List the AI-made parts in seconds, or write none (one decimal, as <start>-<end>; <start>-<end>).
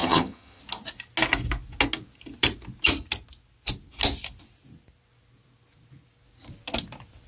0.0-0.6